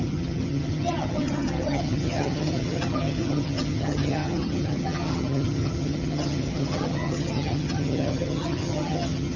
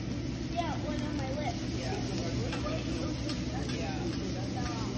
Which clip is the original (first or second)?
second